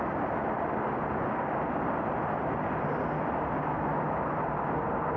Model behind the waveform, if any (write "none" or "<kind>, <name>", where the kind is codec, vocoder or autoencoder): none